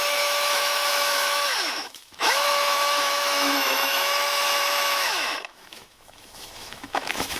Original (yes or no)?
no